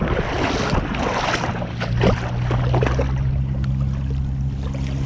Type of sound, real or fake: real